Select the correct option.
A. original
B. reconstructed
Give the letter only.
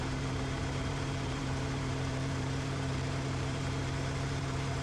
B